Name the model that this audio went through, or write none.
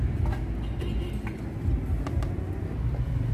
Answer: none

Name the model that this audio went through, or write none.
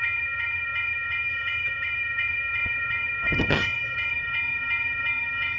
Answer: vocoder, HiFi-GAN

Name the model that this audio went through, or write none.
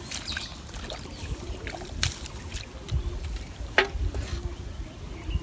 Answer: none